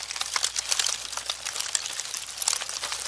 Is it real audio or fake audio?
real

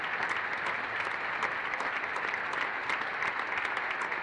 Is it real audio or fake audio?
real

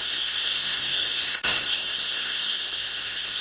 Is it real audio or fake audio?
fake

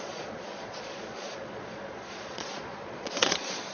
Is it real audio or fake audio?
fake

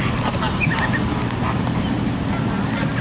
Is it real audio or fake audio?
real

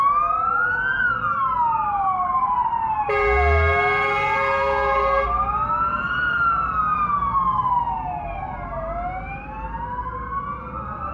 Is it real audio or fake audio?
real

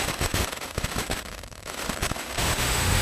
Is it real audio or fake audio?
fake